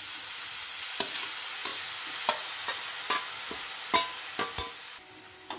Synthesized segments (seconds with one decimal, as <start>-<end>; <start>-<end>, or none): none